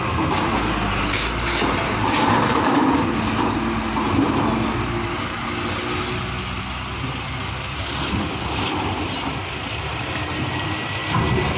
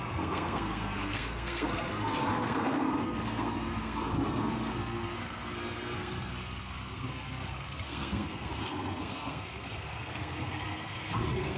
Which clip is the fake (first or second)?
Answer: second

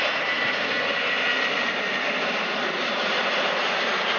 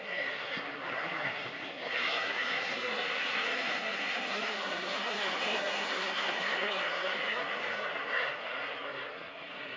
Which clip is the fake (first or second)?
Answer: second